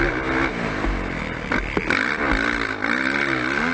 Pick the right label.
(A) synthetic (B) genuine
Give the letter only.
B